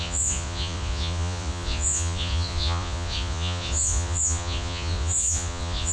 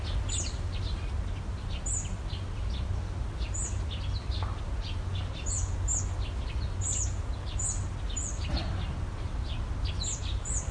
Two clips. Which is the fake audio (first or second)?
first